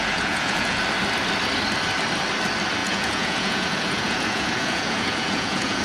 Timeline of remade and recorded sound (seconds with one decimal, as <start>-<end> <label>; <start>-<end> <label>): 0.0-0.8 remade; 0.8-2.8 recorded; 2.8-5.8 remade